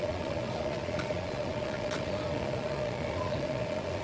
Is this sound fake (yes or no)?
yes